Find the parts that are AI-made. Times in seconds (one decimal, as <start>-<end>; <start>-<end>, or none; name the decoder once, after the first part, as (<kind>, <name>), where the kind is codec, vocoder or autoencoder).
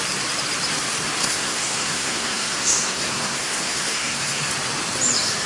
1.2-4.5 (codec, SNAC)